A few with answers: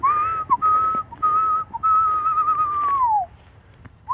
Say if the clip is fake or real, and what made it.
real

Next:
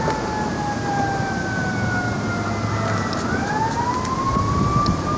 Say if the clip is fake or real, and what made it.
real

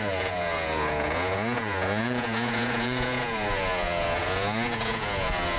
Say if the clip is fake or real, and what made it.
fake, vocoder, Vocos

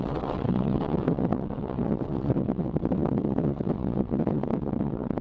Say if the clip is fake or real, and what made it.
fake, vocoder, WaveNeXt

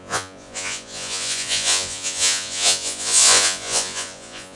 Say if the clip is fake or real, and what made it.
fake, vocoder, Vocos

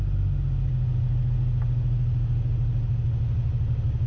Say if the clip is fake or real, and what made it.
real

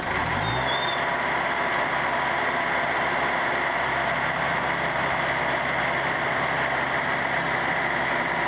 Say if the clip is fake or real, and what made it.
real